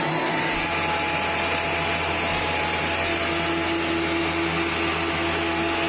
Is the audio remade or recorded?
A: recorded